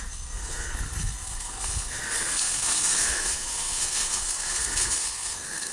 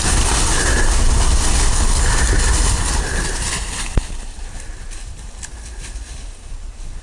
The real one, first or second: second